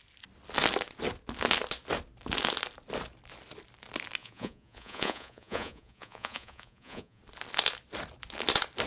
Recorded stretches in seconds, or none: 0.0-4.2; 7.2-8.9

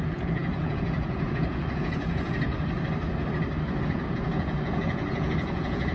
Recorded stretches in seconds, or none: 2.5-3.8

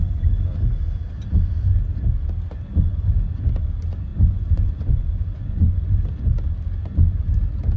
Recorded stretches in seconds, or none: 0.0-4.1; 6.0-7.8

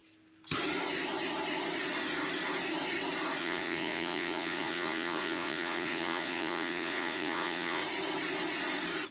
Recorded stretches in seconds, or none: 0.0-3.4; 7.8-9.1